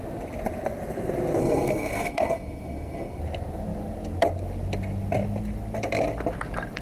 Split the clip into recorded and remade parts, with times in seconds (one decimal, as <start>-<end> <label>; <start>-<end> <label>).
0.0-1.4 recorded; 1.4-3.2 remade; 3.2-6.8 recorded